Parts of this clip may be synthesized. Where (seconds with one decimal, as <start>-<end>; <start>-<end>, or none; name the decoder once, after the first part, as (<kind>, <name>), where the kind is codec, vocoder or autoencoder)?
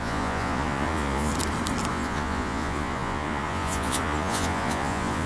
0.0-1.3 (vocoder, Vocos); 1.9-5.3